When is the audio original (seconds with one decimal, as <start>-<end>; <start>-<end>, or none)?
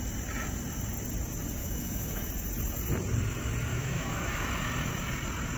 0.0-1.6; 2.3-3.7; 4.5-5.6